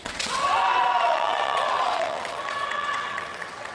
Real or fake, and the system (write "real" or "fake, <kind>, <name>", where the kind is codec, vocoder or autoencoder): fake, vocoder, WaveNeXt